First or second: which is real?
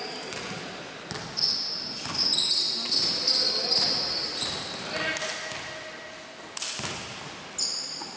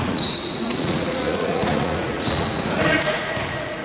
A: first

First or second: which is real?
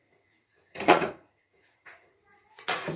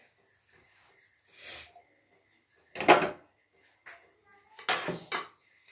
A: second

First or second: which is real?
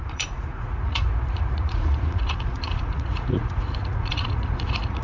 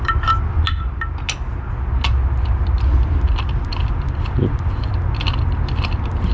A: second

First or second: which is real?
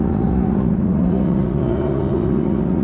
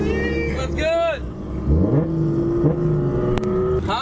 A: second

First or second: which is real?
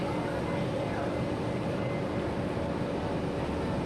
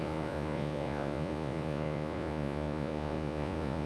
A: first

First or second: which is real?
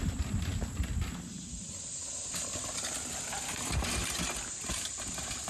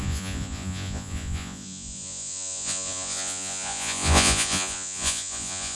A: first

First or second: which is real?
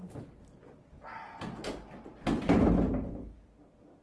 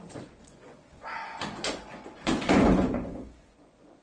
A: first